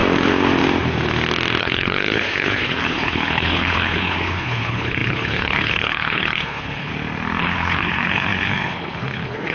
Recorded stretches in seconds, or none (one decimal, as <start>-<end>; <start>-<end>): 0.0-1.6; 6.9-7.4